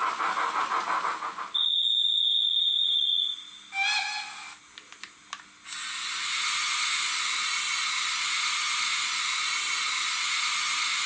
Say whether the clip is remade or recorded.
recorded